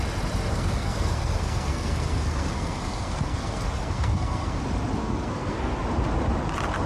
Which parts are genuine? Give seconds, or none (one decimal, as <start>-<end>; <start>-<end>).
0.0-0.5; 4.6-5.0; 5.8-6.9